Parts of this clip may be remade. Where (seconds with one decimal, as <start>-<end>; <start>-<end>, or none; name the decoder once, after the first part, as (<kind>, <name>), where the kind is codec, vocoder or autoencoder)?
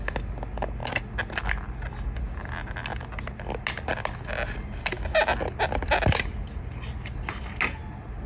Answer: none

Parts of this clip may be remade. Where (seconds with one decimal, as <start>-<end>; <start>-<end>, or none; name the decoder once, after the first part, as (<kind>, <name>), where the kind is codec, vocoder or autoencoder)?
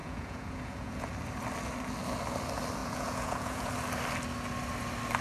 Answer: 0.0-1.1 (vocoder, Vocos); 2.8-3.7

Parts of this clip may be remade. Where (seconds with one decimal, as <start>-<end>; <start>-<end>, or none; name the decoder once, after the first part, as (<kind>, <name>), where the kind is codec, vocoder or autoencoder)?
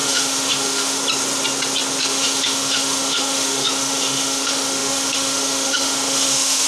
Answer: 0.0-1.0 (autoencoder, DAC-VAE); 2.0-6.7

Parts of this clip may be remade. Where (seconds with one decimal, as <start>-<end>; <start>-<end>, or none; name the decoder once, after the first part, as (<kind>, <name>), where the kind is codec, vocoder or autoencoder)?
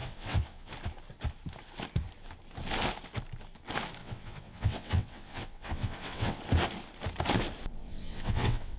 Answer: 0.0-0.7 (vocoder, WaveNeXt); 4.0-6.4; 7.8-8.8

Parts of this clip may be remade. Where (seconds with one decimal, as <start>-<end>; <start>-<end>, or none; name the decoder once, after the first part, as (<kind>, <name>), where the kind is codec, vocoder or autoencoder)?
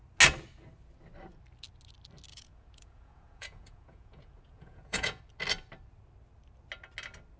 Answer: 2.3-5.2 (vocoder, Vocos)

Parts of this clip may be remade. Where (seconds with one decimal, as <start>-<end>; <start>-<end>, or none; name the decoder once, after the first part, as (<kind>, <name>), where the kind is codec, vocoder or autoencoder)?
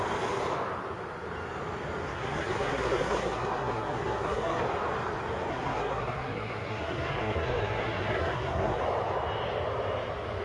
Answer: 2.1-4.6 (codec, SNAC); 5.5-8.8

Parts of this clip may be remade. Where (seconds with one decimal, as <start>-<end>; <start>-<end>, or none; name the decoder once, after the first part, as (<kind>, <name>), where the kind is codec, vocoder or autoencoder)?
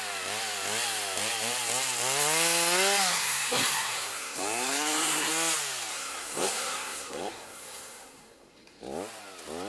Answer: 3.1-5.3 (codec, SNAC); 5.9-8.8